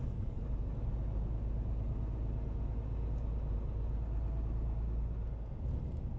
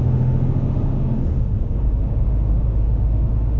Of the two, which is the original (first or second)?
first